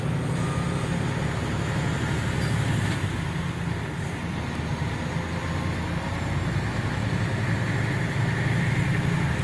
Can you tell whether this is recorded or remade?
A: recorded